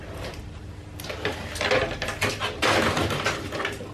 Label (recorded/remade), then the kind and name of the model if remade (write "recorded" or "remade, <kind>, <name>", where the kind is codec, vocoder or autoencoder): recorded